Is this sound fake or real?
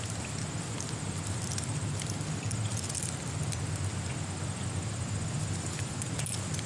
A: real